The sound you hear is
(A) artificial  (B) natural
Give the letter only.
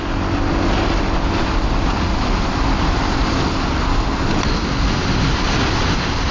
B